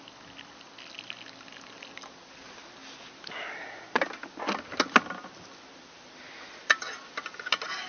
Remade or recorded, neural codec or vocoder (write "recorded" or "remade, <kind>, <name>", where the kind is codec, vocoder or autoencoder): recorded